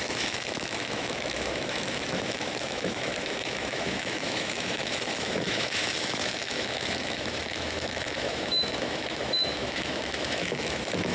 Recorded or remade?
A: remade